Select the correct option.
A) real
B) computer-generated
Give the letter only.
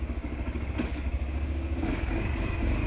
B